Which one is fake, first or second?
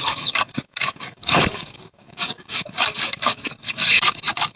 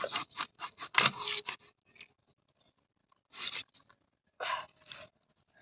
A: first